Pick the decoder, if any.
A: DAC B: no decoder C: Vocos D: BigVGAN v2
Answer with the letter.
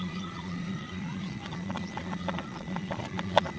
C